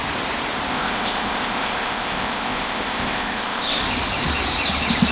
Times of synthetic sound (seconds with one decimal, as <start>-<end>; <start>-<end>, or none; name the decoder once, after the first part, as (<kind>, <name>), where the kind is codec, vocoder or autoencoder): 0.7-3.8 (codec, ZipCodec)

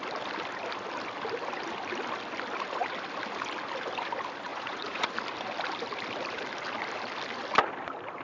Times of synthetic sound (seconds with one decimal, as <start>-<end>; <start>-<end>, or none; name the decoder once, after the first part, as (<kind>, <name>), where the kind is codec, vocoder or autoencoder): 4.5-5.1 (vocoder, Vocos)

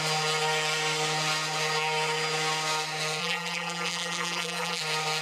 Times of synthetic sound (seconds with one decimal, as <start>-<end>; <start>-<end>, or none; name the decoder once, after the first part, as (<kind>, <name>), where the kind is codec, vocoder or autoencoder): 3.2-4.8 (vocoder, BigVGAN v2)

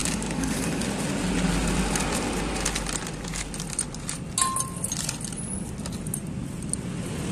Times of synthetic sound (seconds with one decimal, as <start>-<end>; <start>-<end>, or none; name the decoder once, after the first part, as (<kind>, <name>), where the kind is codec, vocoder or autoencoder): 0.0-0.8 (codec, DAC)

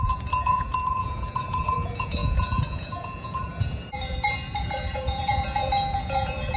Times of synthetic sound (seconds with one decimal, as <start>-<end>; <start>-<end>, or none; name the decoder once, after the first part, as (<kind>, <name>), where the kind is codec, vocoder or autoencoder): 0.0-6.6 (vocoder, Vocos)

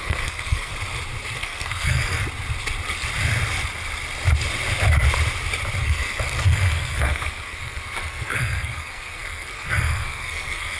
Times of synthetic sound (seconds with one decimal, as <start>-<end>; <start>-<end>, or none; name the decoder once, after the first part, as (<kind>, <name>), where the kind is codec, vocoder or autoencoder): 0.0-0.7 (codec, SNAC); 1.4-2.2; 5.8-10.8

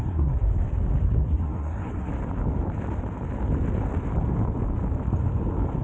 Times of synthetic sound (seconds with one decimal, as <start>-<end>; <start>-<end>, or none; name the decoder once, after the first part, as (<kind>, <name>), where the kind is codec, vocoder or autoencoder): 0.0-0.5 (codec, SNAC); 1.2-2.1